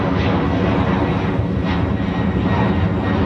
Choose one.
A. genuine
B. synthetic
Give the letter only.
A